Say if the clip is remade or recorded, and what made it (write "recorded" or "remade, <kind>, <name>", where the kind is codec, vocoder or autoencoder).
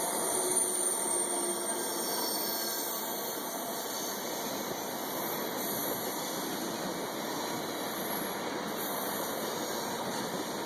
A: recorded